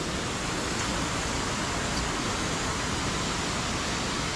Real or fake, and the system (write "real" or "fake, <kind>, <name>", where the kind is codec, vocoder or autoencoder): real